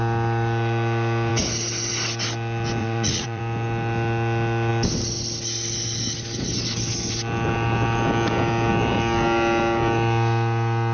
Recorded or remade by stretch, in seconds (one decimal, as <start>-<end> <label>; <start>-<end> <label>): 0.0-2.8 recorded; 2.8-3.4 remade; 3.4-10.9 recorded